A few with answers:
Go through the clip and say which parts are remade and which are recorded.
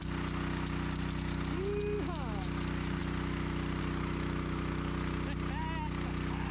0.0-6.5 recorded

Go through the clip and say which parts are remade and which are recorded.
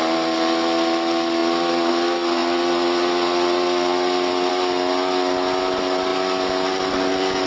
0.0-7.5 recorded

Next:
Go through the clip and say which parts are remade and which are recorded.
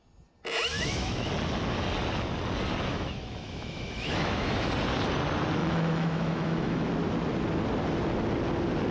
0.0-0.7 recorded; 0.7-1.3 remade; 1.3-2.9 recorded; 2.9-4.7 remade; 4.7-5.6 recorded; 5.6-6.9 remade; 6.9-8.9 recorded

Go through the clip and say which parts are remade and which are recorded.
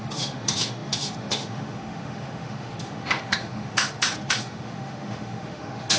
0.0-6.0 remade